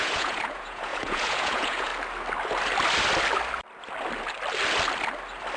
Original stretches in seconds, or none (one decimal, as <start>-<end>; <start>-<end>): 1.9-5.6